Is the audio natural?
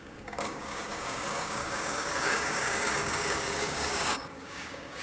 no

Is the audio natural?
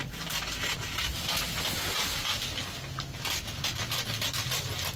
yes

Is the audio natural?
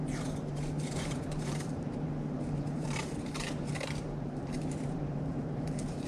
no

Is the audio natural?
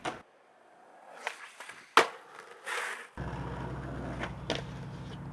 yes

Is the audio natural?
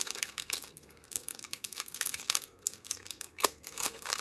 no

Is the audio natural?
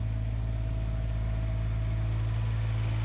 yes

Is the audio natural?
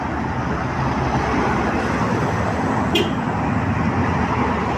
yes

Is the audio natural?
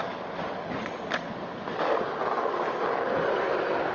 yes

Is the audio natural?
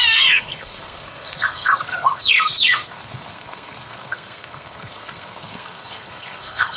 no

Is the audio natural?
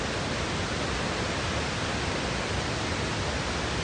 yes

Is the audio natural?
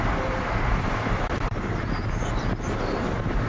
yes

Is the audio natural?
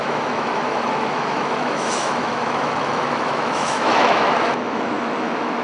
no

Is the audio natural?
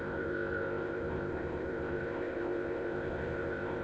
no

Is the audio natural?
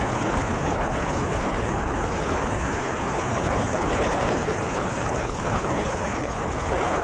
no